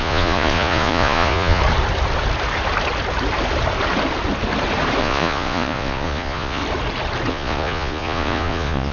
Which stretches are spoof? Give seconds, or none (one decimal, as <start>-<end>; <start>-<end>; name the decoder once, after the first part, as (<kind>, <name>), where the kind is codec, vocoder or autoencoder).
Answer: 0.0-1.6 (vocoder, Vocos); 5.0-6.6; 7.3-8.9